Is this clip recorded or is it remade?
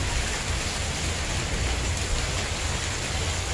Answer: recorded